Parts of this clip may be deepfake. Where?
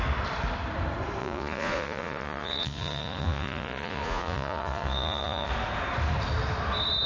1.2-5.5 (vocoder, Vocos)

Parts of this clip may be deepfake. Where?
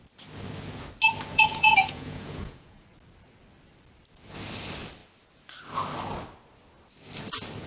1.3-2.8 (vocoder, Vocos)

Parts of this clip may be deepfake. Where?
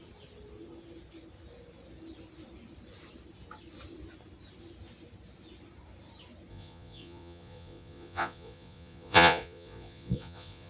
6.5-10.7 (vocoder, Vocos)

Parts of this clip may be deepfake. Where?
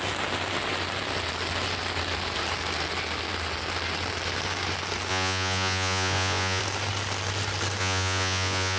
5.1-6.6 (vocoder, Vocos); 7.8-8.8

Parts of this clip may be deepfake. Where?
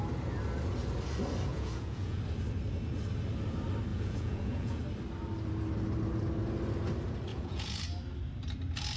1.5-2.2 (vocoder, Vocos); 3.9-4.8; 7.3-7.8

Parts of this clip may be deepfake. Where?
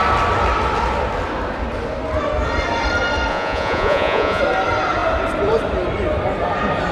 3.3-4.4 (vocoder, Vocos)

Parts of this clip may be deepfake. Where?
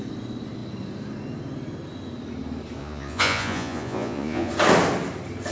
2.8-4.5 (vocoder, Vocos)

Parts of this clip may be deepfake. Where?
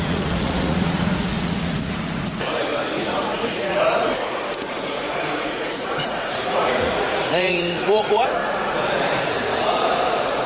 0.0-10.5 (vocoder, Vocos)